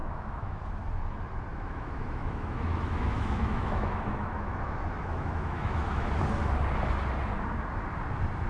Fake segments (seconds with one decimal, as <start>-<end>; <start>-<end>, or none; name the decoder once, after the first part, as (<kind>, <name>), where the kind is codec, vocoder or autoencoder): 0.0-0.6 (autoencoder, DAC-VAE); 1.5-6.1